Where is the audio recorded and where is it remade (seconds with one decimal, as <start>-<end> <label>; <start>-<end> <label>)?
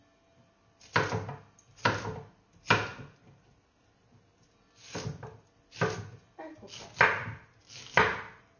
0.0-8.6 recorded